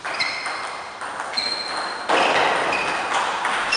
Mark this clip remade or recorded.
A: recorded